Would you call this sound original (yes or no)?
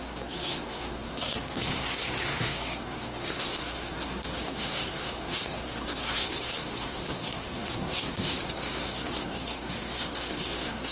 no